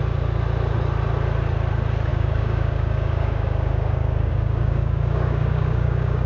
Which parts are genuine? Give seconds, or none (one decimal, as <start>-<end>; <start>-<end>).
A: 0.0-2.1